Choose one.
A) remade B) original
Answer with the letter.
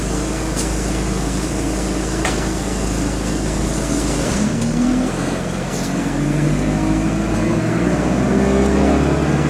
A